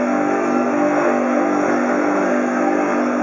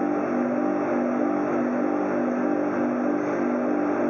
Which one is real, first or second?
second